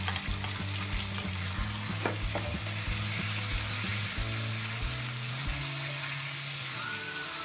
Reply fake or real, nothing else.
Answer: real